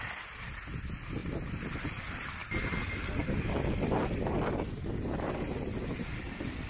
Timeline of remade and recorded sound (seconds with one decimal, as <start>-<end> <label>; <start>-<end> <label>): 0.0-6.7 recorded